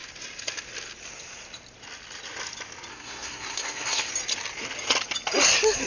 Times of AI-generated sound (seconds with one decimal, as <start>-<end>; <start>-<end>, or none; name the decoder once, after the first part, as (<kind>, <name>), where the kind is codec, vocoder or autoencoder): 2.9-4.1 (codec, SNAC)